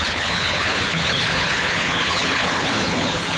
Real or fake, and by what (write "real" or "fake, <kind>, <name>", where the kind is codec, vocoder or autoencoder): fake, codec, HILCodec